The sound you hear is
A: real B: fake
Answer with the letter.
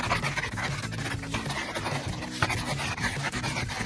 A